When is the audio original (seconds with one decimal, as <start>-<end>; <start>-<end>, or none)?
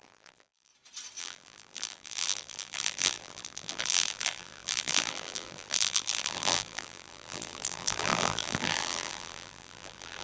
0.7-1.2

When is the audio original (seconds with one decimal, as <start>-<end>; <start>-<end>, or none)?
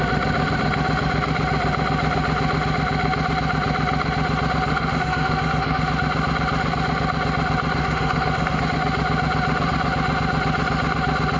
0.0-4.7; 5.9-7.8; 8.6-11.4